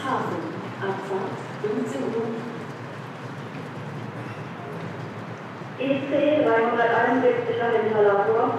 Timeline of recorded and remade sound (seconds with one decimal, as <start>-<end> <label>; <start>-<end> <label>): 0.0-4.7 recorded; 4.7-7.1 remade; 7.1-8.6 recorded